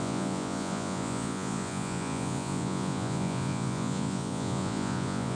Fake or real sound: fake